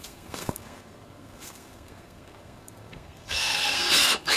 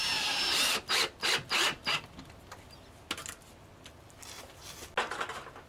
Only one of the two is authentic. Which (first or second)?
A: second